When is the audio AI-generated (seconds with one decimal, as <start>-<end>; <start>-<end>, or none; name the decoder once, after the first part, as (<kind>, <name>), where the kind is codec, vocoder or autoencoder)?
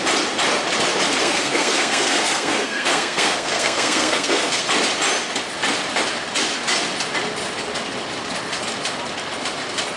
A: 1.2-4.6 (codec, SNAC)